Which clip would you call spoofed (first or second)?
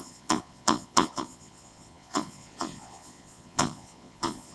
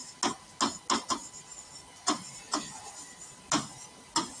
first